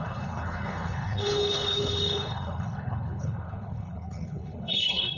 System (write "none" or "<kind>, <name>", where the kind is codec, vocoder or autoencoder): codec, HILCodec